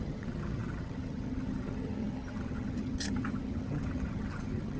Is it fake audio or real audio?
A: fake